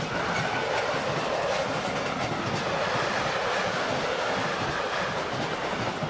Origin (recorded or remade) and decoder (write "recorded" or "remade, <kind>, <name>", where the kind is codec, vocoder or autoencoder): recorded